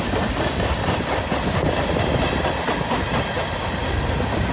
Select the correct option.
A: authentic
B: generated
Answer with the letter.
A